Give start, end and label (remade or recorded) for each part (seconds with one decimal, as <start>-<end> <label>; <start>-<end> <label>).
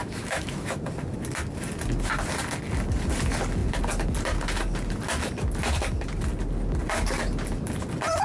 0.0-0.8 remade; 0.8-8.2 recorded